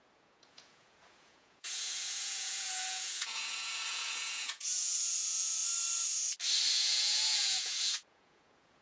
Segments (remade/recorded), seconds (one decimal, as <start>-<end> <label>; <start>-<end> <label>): 0.0-5.6 remade; 5.6-6.7 recorded; 6.7-8.8 remade